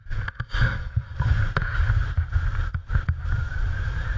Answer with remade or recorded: recorded